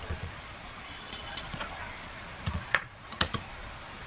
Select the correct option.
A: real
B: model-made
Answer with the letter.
B